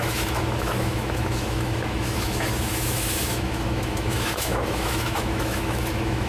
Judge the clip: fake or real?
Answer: fake